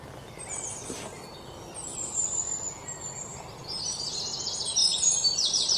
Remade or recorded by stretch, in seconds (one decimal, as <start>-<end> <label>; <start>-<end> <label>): 0.0-1.9 recorded; 1.9-2.7 remade; 2.7-4.8 recorded; 4.8-5.8 remade